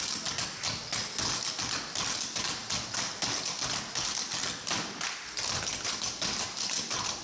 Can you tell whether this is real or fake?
real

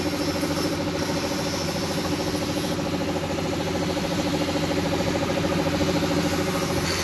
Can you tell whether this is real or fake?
real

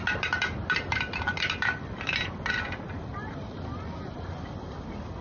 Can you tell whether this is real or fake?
fake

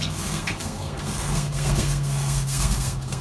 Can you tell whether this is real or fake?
fake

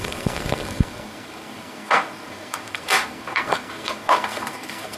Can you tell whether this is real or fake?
fake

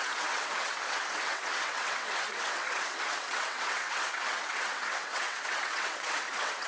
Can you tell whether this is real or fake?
fake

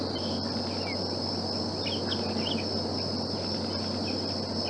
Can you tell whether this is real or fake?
real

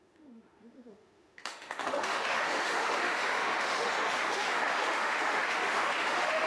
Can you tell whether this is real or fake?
fake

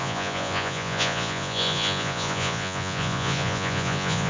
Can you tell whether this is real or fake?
fake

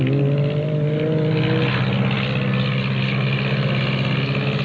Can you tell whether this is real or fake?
real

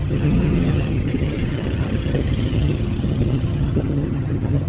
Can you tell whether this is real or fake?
fake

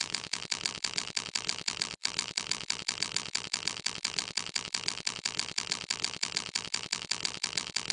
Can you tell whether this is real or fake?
fake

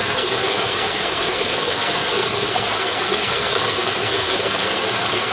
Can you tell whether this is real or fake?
fake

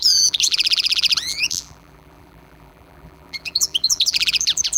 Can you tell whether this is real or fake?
fake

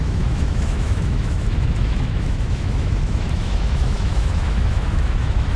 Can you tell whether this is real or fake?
fake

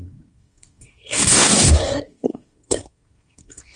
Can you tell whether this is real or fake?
fake